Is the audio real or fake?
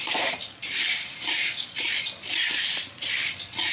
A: fake